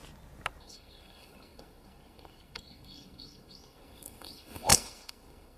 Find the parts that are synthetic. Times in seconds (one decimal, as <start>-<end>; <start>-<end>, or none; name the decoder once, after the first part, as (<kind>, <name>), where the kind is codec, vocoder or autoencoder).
0.6-5.6 (codec, SNAC)